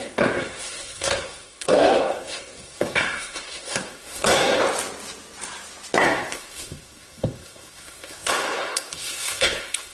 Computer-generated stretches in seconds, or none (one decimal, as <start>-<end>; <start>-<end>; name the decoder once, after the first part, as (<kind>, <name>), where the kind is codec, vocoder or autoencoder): 0.0-4.6 (codec, SNAC); 6.0-9.9